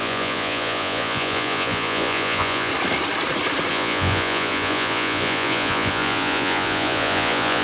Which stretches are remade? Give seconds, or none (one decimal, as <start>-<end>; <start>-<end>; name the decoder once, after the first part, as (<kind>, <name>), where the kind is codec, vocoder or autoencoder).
0.0-2.7 (vocoder, Vocos); 3.7-7.6